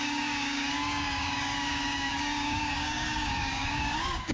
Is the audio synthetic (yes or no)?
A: yes